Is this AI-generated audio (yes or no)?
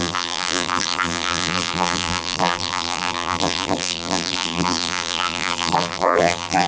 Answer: yes